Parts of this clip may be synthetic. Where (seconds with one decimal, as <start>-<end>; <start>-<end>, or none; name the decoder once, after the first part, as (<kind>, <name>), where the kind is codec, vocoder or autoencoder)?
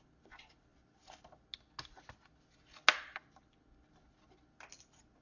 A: none